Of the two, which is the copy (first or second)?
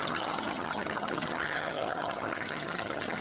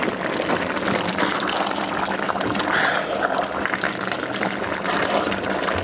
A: first